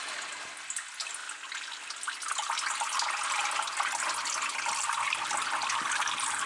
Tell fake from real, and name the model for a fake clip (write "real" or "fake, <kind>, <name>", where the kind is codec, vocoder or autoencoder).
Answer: real